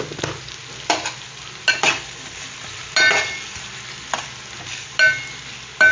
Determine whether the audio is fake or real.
real